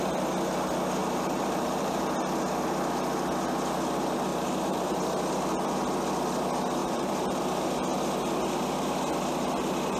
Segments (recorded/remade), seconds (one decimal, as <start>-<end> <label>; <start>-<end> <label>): 0.0-1.0 recorded; 1.0-2.0 remade; 2.0-4.3 recorded; 4.3-5.0 remade; 5.0-6.8 recorded; 6.8-7.4 remade; 7.4-10.0 recorded